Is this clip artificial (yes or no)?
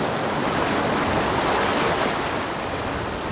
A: no